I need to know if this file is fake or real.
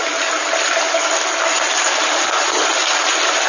real